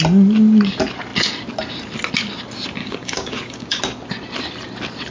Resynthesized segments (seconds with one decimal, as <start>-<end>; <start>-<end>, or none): 2.8-3.8